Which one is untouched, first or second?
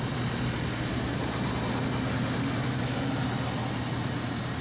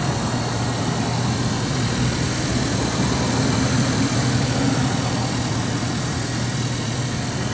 first